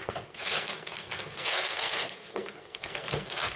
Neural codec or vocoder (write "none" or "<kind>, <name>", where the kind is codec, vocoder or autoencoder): codec, SNAC